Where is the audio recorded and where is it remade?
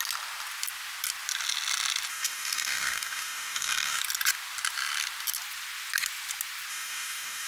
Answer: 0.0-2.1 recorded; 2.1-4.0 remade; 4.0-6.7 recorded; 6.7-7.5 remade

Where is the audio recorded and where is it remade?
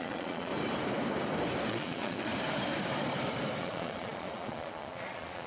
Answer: 0.0-0.5 remade; 0.5-1.7 recorded; 1.7-2.3 remade; 2.3-3.6 recorded; 3.6-5.5 remade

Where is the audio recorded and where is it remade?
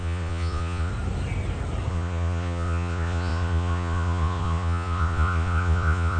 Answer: 0.0-0.9 remade; 0.9-1.9 recorded; 1.9-6.2 remade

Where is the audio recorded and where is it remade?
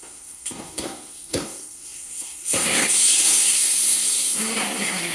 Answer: 0.0-5.1 remade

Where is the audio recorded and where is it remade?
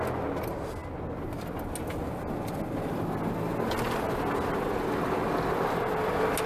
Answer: 0.0-6.5 recorded